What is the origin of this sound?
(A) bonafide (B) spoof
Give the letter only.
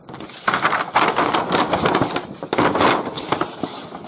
A